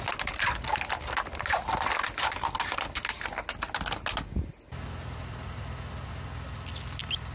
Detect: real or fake real